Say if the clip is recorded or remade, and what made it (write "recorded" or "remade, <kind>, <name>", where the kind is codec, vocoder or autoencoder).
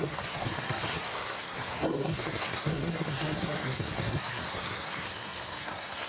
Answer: remade, codec, SNAC